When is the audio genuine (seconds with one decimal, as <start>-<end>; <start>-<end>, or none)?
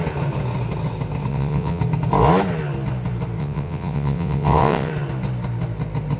0.0-1.3; 1.8-3.4; 4.9-6.2